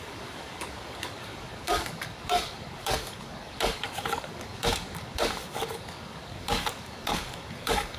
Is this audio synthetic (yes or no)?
yes